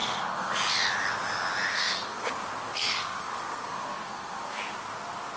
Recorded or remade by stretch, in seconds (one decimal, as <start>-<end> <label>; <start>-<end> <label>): 0.0-0.6 remade; 0.6-1.7 recorded; 1.7-2.3 remade; 2.3-2.7 recorded; 2.7-4.6 remade; 4.6-5.4 recorded